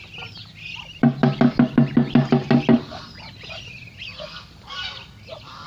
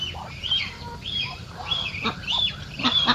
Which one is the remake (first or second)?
second